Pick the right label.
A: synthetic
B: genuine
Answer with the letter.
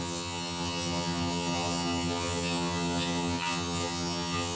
A